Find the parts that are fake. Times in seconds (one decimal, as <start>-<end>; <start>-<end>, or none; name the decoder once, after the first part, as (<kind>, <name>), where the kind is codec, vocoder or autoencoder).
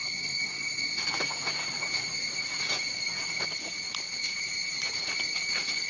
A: 1.5-5.9 (vocoder, Vocos)